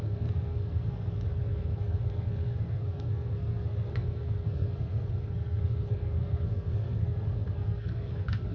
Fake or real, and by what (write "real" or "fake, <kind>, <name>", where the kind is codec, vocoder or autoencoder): fake, codec, SNAC